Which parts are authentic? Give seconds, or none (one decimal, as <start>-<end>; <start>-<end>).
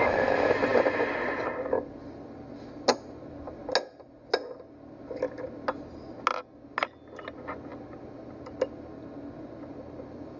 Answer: 0.0-10.4